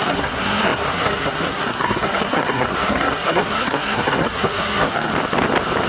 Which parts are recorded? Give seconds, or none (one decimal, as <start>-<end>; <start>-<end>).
5.1-5.9